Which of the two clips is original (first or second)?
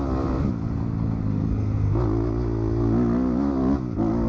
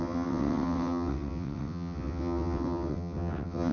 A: first